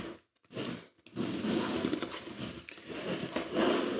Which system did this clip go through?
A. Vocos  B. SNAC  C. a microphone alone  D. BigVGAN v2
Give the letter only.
C